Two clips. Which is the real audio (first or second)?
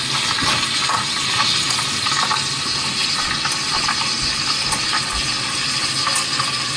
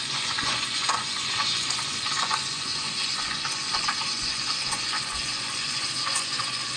first